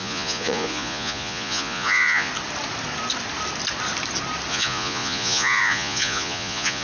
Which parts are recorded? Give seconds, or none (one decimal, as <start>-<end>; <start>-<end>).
2.3-4.5